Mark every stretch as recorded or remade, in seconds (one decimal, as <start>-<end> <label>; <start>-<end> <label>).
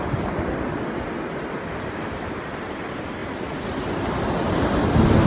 0.0-3.2 recorded; 3.2-3.9 remade; 3.9-5.3 recorded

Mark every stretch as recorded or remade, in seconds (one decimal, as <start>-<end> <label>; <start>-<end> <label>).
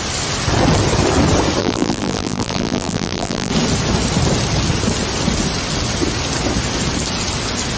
0.0-1.6 recorded; 1.6-3.5 remade; 3.5-7.8 recorded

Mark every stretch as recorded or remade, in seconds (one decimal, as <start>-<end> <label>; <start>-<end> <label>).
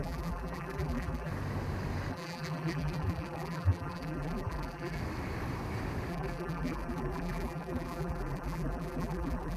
0.0-1.3 remade; 1.3-2.1 recorded; 2.1-5.0 remade; 5.0-6.1 recorded; 6.1-9.6 remade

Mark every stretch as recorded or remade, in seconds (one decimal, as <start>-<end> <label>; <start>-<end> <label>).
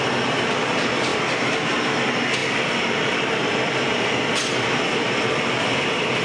0.0-1.1 recorded; 1.1-1.7 remade; 1.7-2.4 recorded; 2.4-6.2 remade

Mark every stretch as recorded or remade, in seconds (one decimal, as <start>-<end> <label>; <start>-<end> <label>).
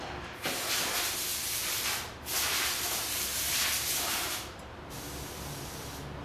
0.0-1.3 recorded; 1.3-5.0 remade; 5.0-6.2 recorded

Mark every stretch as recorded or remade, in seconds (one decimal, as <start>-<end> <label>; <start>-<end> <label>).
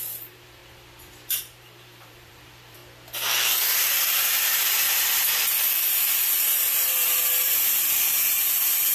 0.0-0.6 remade; 0.6-1.4 recorded; 1.4-2.8 remade; 2.8-5.9 recorded; 5.9-8.9 remade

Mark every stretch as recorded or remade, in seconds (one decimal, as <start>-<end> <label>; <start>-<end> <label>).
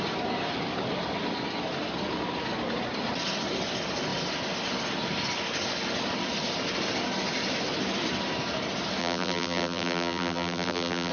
0.0-9.0 recorded; 9.0-11.1 remade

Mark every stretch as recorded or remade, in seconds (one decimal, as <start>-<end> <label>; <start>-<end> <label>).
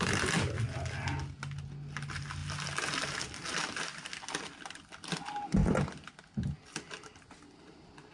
0.0-8.1 recorded